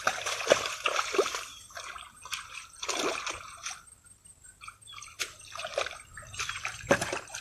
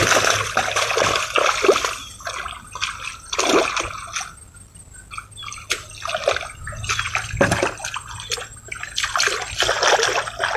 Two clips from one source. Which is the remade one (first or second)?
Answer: first